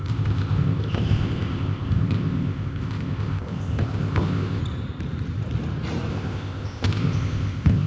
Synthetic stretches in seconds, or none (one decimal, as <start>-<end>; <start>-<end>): 0.0-4.6; 6.1-7.9